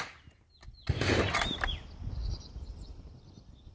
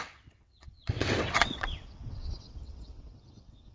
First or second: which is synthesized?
second